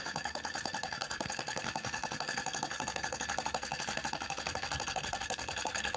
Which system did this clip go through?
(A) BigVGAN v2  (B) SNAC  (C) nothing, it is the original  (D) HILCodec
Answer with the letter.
B